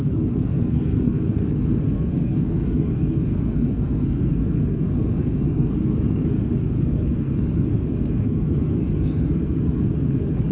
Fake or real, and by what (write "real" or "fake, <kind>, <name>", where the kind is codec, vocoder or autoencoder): fake, codec, SNAC